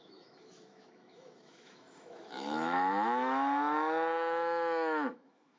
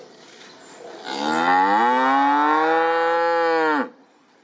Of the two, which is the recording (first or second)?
second